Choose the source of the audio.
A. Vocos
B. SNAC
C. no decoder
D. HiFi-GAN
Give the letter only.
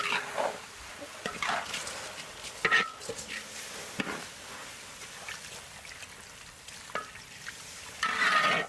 C